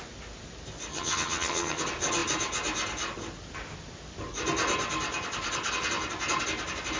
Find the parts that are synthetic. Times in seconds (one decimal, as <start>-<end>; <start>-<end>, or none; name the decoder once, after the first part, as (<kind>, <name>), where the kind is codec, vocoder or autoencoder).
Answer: 0.9-1.8 (vocoder, HiFi-GAN)